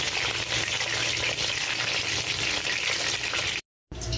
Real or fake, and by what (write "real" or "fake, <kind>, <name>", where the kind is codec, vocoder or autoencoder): real